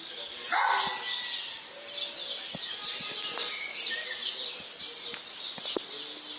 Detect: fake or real real